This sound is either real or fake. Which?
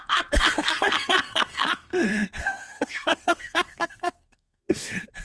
fake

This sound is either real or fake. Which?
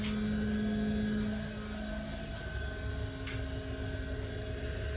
real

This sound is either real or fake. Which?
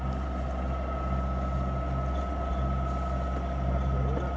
real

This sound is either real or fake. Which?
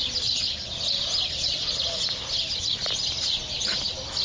real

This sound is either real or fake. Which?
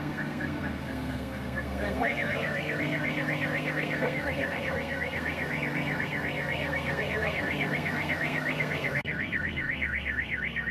fake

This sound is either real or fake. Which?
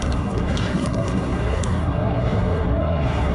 fake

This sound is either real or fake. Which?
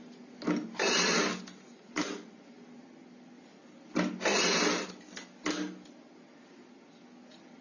real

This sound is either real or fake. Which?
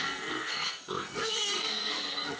fake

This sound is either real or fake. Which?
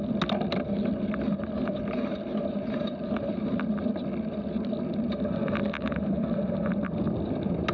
real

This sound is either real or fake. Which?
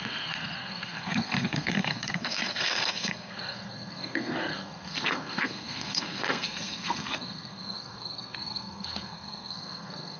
fake